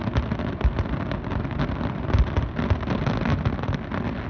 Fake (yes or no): no